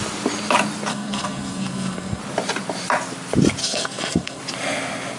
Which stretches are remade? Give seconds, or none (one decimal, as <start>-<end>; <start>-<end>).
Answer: 0.9-2.2; 3.6-4.4